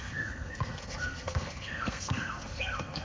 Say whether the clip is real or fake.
fake